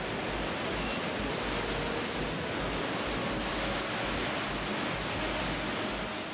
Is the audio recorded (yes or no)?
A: yes